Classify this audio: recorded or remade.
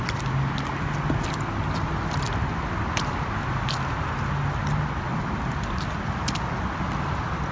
recorded